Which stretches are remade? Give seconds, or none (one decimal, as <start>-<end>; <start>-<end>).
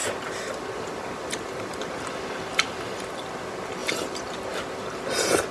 none